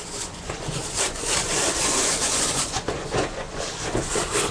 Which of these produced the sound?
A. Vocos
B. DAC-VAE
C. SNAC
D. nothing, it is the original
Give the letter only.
A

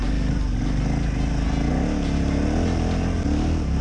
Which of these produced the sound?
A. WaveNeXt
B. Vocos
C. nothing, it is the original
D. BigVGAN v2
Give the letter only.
C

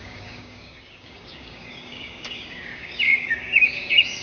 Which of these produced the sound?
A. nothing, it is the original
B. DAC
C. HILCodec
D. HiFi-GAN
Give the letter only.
B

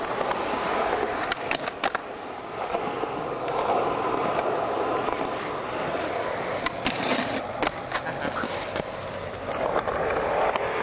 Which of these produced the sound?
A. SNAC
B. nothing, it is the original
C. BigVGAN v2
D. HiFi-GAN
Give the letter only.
B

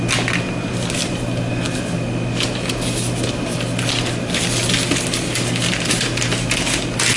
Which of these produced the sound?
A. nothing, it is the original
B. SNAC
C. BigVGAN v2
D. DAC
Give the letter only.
A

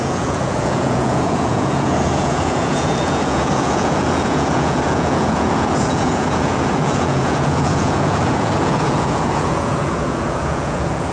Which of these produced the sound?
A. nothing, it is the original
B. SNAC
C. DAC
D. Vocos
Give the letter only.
D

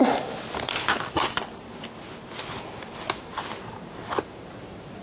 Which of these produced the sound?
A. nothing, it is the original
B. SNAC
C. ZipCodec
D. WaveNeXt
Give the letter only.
A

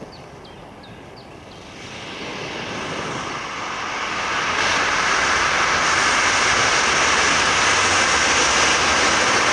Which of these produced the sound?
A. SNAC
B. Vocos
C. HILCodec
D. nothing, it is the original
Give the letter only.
D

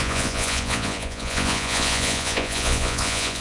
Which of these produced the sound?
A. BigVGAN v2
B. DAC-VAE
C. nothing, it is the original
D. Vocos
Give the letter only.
D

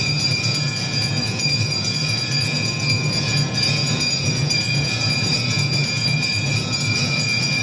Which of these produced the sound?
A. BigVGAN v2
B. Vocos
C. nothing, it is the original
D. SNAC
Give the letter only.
B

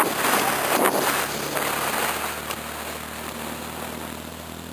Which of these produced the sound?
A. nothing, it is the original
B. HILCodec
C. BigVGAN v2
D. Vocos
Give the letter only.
C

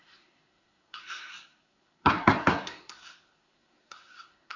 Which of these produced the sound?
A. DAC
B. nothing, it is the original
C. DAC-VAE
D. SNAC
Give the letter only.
D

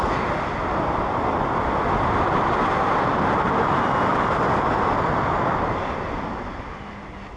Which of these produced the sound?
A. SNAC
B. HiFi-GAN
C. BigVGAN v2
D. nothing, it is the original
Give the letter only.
D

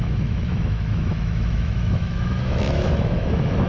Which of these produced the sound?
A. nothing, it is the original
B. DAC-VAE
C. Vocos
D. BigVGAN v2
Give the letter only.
B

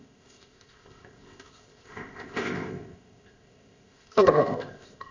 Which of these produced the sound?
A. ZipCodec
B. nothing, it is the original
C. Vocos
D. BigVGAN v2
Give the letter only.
A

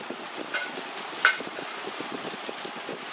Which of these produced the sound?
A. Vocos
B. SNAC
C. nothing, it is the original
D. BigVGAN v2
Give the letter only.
C